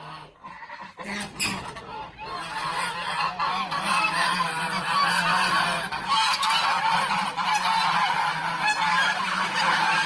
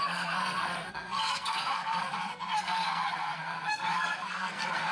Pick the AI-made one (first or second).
second